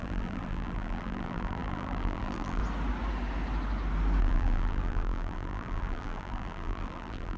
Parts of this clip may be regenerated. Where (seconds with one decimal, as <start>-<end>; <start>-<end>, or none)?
0.0-2.6; 4.2-7.4